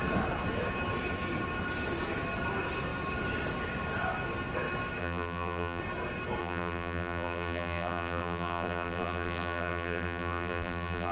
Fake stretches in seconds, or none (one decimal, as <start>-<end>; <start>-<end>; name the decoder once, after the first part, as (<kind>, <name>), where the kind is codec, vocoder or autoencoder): 5.0-5.8 (vocoder, BigVGAN v2); 6.4-11.1